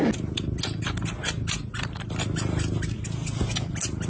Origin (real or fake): real